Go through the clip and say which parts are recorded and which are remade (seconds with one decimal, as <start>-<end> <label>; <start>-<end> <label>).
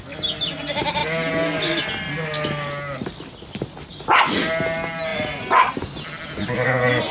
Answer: 0.0-7.1 recorded